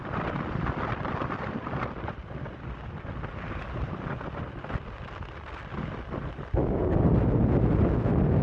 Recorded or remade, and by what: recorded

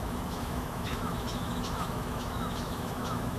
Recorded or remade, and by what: remade, autoencoder, DAC-VAE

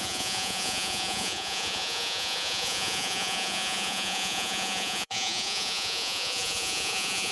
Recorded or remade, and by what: remade, vocoder, Vocos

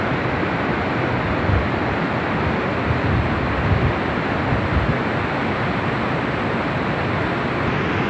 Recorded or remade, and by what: recorded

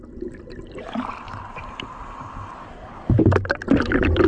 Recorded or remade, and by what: recorded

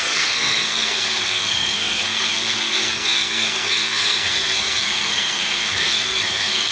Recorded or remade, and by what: remade, codec, SNAC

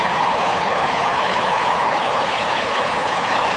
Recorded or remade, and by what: remade, codec, HILCodec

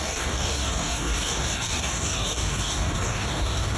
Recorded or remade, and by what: remade, codec, DAC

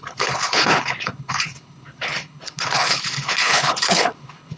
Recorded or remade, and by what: remade, codec, HILCodec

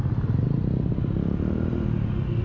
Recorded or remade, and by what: recorded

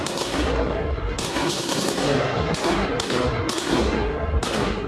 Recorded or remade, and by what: remade, codec, SNAC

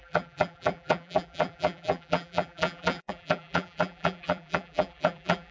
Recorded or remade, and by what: remade, vocoder, BigVGAN v2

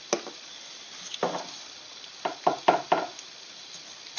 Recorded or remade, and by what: recorded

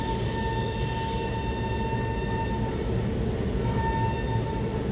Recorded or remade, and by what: recorded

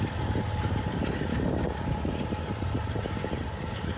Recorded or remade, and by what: recorded